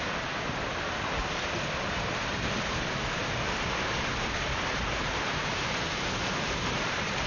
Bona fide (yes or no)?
no